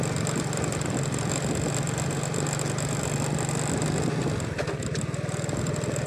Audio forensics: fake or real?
real